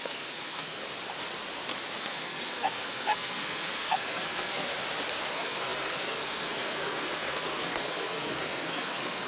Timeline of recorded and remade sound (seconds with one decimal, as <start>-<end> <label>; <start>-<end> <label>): 0.0-0.8 remade; 0.8-2.0 recorded; 2.0-4.7 remade; 4.7-5.3 recorded; 5.3-9.3 remade